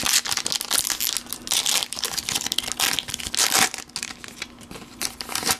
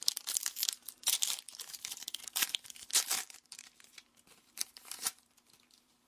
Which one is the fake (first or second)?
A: second